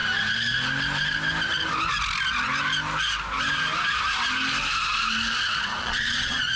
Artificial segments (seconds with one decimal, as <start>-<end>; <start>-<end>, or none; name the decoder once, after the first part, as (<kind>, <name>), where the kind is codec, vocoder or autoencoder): 5.8-6.6 (vocoder, Vocos)